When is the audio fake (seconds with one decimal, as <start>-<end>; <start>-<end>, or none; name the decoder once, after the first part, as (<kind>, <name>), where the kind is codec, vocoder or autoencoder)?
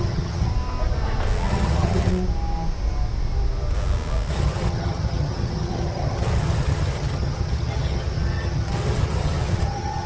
0.0-0.5 (vocoder, HiFi-GAN); 1.5-2.1; 4.3-10.1